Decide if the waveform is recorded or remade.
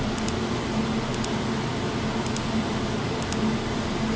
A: recorded